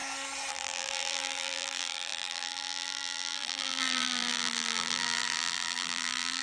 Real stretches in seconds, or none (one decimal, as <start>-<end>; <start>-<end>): 0.0-0.5